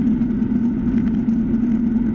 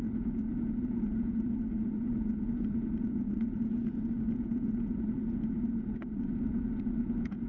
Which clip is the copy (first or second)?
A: second